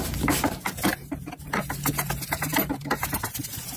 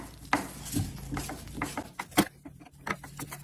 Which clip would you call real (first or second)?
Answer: second